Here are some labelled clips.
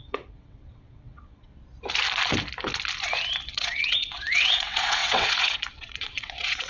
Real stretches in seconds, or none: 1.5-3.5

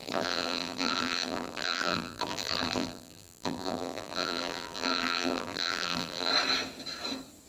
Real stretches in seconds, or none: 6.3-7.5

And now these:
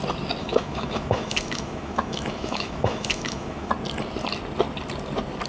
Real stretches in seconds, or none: 0.0-0.4; 3.7-5.5

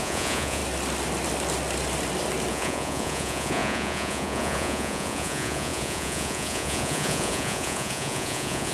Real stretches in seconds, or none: 0.6-2.5

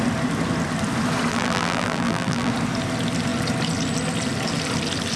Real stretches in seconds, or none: 0.0-1.3; 2.5-5.2

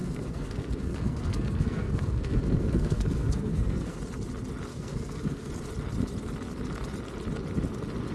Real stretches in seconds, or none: 4.0-4.7; 5.5-8.1